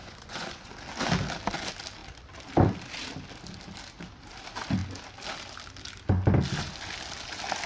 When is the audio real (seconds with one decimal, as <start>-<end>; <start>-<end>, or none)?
0.7-7.7